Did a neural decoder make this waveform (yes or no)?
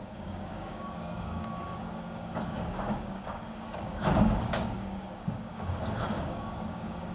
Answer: yes